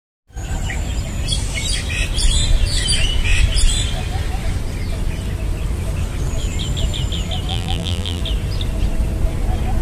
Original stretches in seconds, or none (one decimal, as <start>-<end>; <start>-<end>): 0.0-7.5; 8.2-9.8